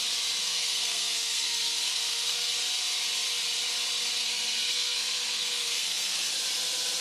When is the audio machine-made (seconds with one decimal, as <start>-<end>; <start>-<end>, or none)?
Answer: 0.4-2.5; 4.2-6.3